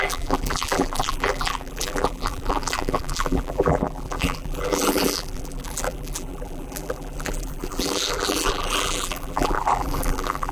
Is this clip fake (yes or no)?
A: yes